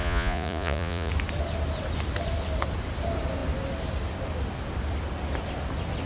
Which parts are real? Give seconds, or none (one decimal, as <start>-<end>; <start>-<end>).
1.1-6.1